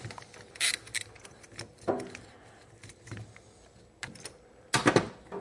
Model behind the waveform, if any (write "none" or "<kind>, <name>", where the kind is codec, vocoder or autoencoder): none